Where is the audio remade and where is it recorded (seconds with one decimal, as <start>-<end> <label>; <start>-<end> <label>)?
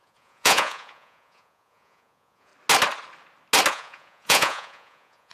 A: 0.0-2.5 remade; 2.5-3.7 recorded; 3.7-5.3 remade